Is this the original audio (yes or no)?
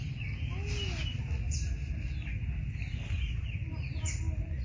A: yes